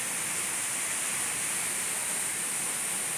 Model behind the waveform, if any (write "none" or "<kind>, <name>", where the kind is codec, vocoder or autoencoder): none